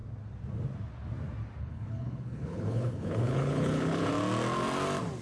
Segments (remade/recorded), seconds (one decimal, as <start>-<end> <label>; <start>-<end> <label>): 0.0-1.6 recorded; 1.6-4.1 remade; 4.1-5.2 recorded